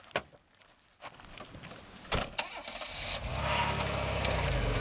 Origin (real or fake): real